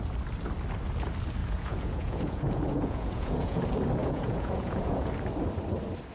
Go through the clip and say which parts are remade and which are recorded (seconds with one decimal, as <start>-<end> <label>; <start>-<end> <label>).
0.0-1.4 recorded; 1.4-3.6 remade; 3.6-4.0 recorded; 4.0-5.1 remade; 5.1-6.1 recorded